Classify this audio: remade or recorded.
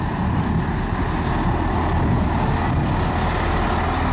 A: recorded